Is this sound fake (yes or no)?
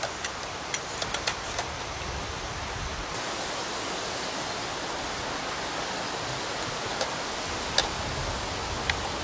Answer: no